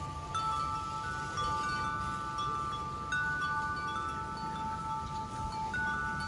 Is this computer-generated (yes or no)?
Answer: no